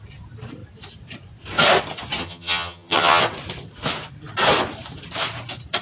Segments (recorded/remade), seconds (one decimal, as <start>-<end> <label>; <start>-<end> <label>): 0.0-2.2 recorded; 2.2-3.2 remade; 3.2-5.8 recorded